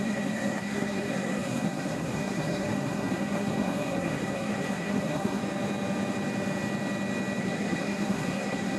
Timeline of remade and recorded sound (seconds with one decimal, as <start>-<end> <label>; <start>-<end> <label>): 0.0-5.4 remade; 5.4-7.4 recorded; 7.4-8.8 remade